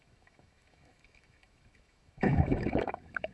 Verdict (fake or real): fake